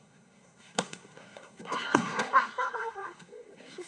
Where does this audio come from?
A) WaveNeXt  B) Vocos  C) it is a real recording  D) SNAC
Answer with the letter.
D